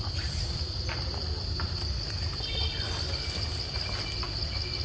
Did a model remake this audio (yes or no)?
no